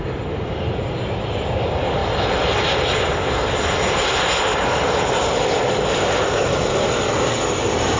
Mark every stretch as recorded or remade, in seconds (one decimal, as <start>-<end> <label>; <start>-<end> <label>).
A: 0.0-4.5 recorded; 4.5-7.4 remade; 7.4-8.0 recorded